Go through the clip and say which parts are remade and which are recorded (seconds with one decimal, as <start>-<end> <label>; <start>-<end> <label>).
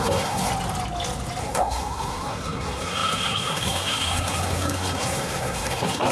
0.0-0.5 remade; 0.5-1.4 recorded; 1.4-6.1 remade